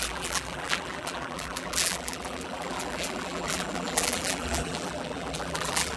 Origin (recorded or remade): remade